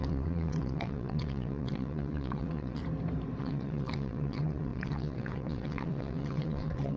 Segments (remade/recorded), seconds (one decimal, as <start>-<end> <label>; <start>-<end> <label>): 0.0-2.8 remade; 2.8-3.4 recorded; 3.4-7.0 remade

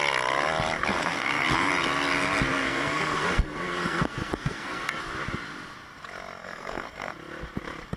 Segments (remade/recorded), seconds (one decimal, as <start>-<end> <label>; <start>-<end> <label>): 0.0-0.9 recorded; 0.9-1.7 remade; 1.7-2.6 recorded; 2.6-5.0 remade; 5.0-6.4 recorded; 6.4-7.1 remade; 7.1-8.0 recorded

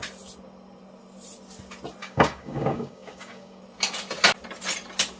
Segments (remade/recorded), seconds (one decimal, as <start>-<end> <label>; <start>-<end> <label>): 0.0-2.0 recorded; 2.0-3.6 remade; 3.6-5.2 recorded

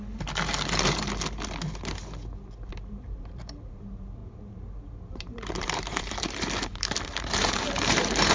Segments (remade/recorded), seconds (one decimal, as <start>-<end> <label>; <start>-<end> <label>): 0.0-2.7 recorded; 2.7-4.2 remade; 4.2-5.1 recorded; 5.1-8.3 remade

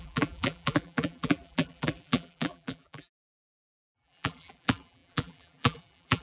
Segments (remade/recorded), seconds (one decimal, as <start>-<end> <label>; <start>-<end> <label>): 0.0-6.2 remade